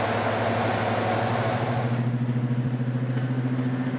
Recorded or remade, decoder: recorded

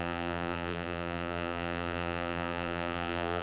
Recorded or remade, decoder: remade, vocoder, BigVGAN v2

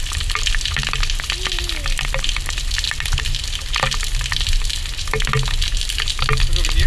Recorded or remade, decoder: recorded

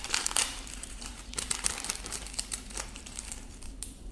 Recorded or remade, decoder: remade, vocoder, BigVGAN v2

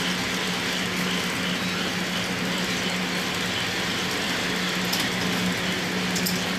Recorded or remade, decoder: recorded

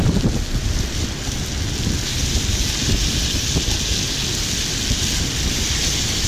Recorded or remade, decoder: recorded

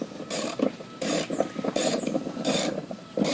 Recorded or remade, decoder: remade, vocoder, BigVGAN v2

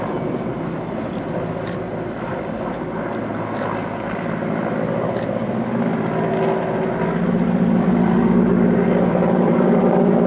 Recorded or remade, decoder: recorded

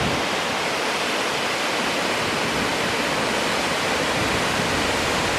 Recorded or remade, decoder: recorded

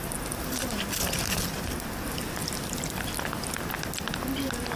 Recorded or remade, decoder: recorded